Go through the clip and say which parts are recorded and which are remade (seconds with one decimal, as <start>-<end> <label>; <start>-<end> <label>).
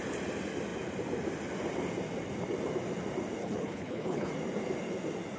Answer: 0.0-3.4 recorded; 3.4-4.3 remade; 4.3-5.4 recorded